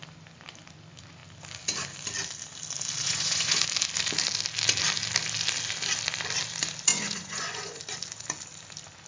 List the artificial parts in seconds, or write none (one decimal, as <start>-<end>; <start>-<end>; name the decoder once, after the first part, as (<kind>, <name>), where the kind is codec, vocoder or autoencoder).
3.0-3.6 (vocoder, Vocos); 6.9-7.8